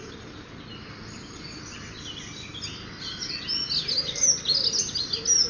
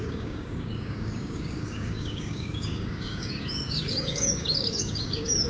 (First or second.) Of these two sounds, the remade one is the second